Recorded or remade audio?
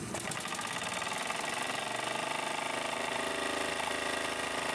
recorded